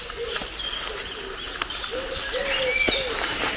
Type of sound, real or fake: real